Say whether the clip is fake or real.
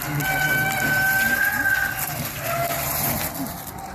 real